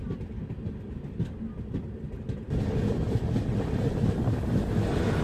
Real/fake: real